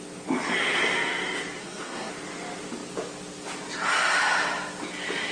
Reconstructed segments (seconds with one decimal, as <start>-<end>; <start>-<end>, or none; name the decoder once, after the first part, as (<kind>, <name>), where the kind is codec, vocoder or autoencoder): 1.6-2.1 (codec, SNAC)